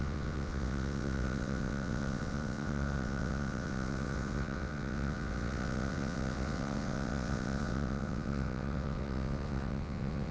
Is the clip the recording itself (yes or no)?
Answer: no